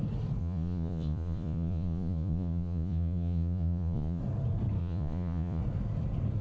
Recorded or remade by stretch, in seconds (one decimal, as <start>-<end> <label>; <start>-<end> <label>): 0.0-0.4 recorded; 0.4-4.2 remade; 4.2-4.8 recorded; 4.8-5.6 remade; 5.6-6.4 recorded